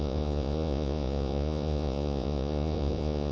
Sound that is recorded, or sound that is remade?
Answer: remade